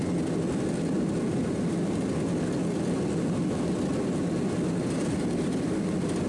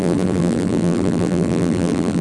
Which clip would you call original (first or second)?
first